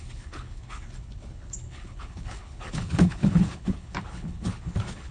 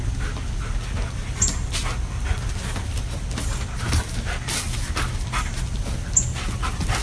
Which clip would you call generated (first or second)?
first